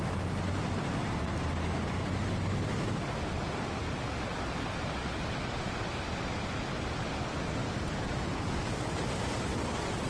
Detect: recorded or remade recorded